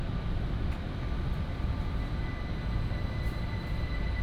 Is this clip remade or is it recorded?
remade